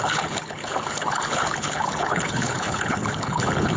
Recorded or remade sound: remade